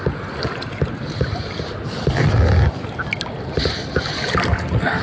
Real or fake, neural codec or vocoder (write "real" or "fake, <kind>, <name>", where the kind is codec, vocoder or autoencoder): real